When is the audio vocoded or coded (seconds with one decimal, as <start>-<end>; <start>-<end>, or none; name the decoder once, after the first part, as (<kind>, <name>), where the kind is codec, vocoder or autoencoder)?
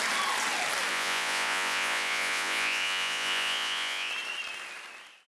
0.9-4.1 (vocoder, Vocos)